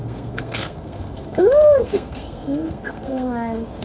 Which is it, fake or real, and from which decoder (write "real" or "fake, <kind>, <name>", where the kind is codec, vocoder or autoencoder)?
fake, codec, SNAC